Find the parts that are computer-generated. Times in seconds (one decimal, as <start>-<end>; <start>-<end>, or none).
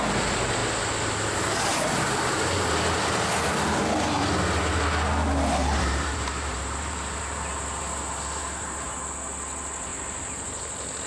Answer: 5.6-7.8; 8.4-9.0